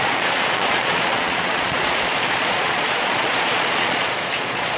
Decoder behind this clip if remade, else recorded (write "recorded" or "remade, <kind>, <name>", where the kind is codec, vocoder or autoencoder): remade, vocoder, Vocos